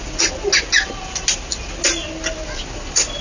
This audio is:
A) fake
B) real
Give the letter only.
B